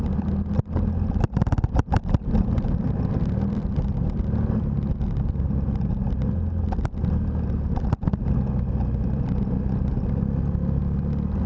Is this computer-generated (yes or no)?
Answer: no